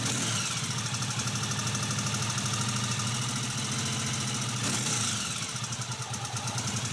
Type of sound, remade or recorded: recorded